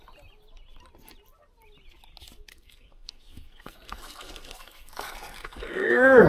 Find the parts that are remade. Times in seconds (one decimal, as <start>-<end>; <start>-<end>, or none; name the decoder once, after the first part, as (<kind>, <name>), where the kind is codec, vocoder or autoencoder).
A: 2.5-6.3 (codec, SNAC)